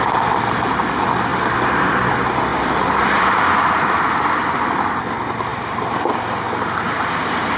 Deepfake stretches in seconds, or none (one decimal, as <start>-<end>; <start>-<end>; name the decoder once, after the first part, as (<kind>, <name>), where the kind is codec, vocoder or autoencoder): 1.3-2.1 (vocoder, BigVGAN v2); 2.5-5.0